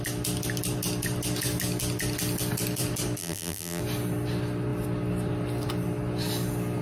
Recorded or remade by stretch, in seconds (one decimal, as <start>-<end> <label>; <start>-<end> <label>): 0.0-3.2 recorded; 3.2-3.8 remade; 3.8-6.8 recorded